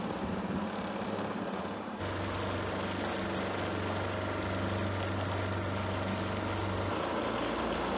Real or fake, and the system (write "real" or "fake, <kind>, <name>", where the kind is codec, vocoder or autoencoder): real